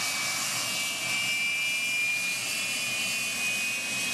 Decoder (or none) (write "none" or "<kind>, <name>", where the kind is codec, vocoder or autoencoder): none